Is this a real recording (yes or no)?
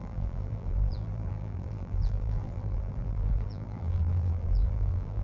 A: no